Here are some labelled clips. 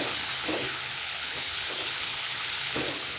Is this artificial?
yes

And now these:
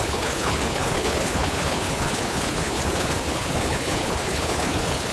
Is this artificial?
yes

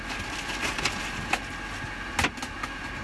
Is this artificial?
no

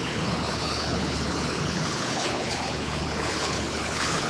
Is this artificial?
yes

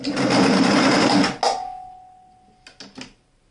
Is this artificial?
no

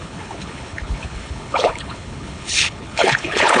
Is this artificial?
yes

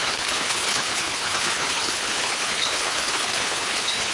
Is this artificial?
yes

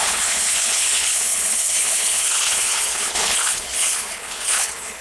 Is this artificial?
yes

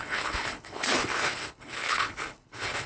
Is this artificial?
yes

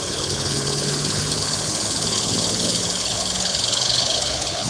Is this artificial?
yes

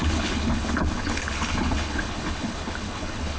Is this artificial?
yes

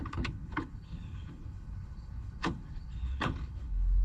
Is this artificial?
yes